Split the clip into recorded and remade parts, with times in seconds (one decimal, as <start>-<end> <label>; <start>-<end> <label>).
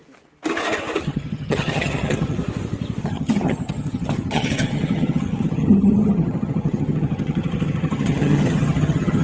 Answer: 0.0-1.0 recorded; 1.0-2.4 remade; 2.4-3.0 recorded; 3.0-9.2 remade